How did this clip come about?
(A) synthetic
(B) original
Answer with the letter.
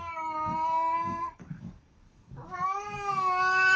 A